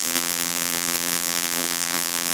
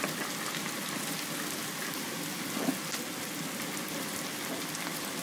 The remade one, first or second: first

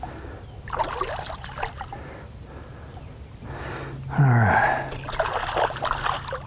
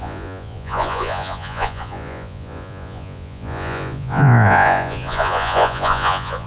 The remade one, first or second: second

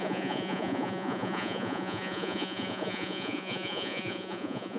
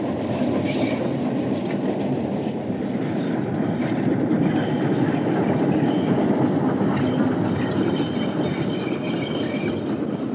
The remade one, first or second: first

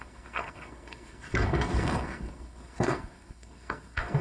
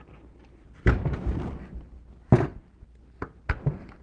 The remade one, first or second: first